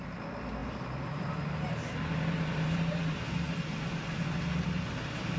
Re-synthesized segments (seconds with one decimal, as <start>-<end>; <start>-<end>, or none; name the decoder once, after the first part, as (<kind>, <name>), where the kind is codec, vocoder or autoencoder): 0.6-3.2 (vocoder, BigVGAN v2)